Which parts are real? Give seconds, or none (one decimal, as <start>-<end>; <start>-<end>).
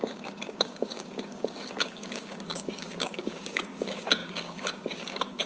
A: none